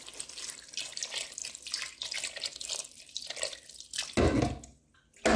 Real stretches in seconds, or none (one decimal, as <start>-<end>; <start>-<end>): 0.0-5.4